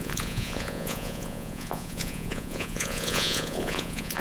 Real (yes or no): no